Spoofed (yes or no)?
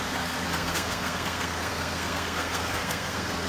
yes